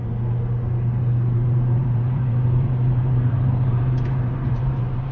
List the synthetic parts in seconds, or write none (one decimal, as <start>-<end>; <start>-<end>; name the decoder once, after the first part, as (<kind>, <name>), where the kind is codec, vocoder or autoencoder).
1.0-5.1 (vocoder, BigVGAN v2)